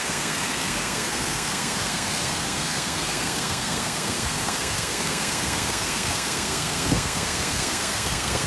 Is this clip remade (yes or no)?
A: yes